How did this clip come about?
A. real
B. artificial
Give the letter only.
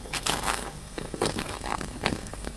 B